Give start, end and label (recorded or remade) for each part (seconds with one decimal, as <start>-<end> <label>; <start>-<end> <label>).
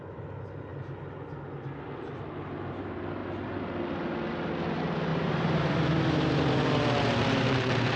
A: 0.0-5.1 recorded; 5.1-8.0 remade